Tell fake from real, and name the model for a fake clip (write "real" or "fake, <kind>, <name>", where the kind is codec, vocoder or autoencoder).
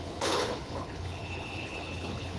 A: fake, codec, HILCodec